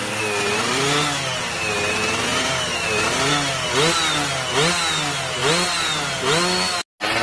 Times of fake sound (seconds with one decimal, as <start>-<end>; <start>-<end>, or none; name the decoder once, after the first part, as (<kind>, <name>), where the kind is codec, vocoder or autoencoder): none